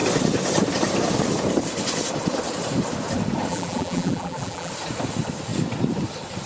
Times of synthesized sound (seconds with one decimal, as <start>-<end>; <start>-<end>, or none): 3.5-4.7